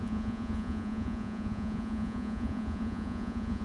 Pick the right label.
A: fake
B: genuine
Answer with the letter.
A